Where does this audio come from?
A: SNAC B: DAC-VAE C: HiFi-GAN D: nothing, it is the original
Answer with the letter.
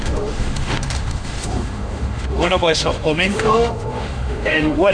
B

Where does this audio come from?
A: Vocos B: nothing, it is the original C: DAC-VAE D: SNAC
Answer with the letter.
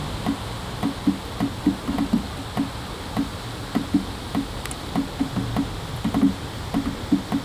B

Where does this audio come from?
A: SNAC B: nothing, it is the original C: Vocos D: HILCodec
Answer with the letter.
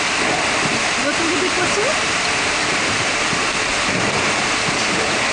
B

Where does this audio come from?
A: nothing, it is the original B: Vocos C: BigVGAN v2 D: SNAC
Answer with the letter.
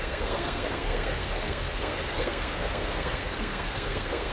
D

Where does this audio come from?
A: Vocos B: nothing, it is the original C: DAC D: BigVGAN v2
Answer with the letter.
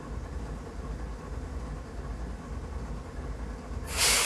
B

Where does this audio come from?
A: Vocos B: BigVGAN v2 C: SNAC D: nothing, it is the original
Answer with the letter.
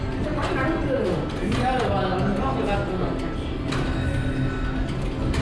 D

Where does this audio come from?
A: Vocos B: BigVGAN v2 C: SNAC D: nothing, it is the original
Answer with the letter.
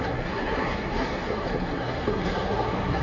C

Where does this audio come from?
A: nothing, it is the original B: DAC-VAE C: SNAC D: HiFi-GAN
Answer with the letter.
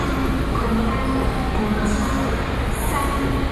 A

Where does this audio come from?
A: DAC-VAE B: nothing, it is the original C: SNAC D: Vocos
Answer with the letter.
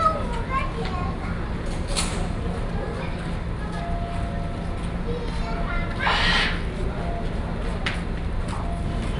B